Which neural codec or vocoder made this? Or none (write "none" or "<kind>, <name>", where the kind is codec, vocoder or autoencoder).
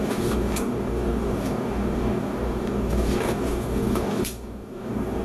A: codec, DAC